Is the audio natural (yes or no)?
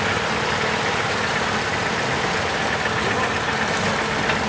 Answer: yes